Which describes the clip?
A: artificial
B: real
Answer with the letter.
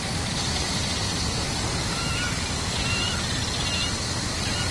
B